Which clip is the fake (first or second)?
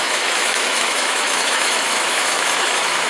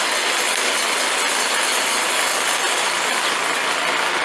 first